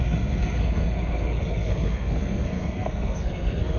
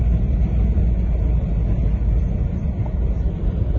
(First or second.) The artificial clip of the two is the first